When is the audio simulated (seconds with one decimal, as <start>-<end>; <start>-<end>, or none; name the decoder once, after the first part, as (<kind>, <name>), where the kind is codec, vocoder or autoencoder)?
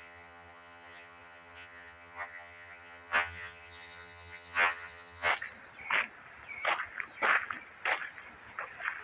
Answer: 0.0-5.3 (vocoder, HiFi-GAN)